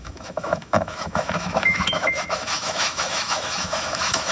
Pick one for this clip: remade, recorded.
remade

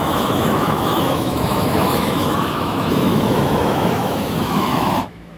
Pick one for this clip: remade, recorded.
remade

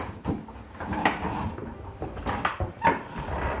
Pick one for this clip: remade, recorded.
recorded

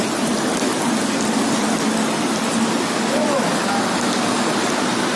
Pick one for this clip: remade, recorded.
recorded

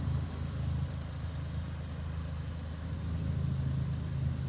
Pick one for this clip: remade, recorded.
recorded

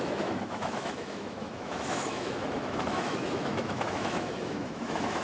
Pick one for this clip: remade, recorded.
remade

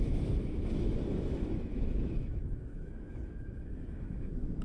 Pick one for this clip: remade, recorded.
remade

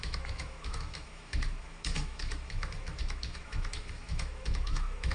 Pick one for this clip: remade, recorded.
remade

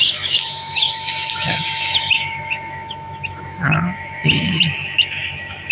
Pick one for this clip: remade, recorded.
remade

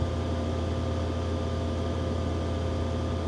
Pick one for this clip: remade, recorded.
recorded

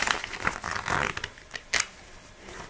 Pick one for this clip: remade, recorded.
recorded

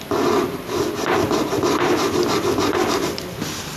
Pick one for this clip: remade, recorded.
recorded